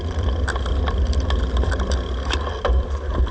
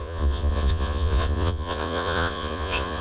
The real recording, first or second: first